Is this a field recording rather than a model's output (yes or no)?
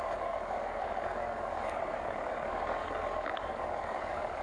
no